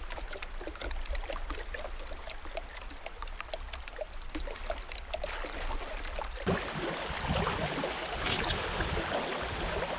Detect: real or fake real